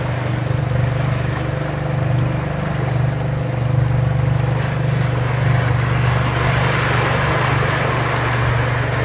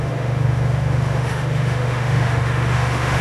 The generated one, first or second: second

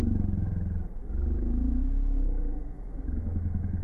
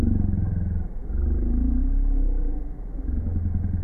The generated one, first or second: first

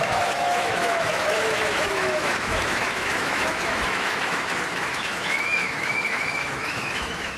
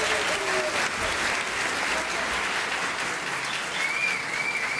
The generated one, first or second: first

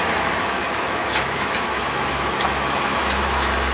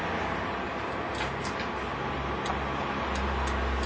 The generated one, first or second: first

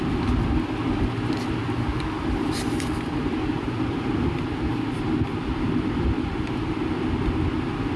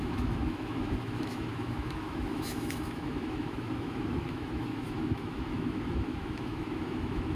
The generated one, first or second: second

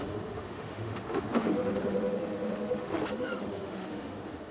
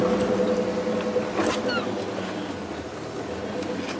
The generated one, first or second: first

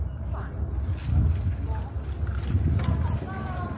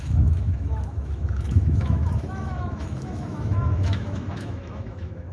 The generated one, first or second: second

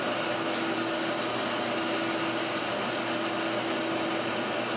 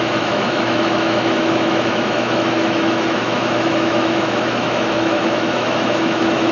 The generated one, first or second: second